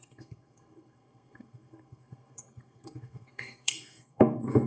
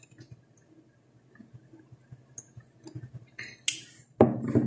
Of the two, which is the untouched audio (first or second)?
second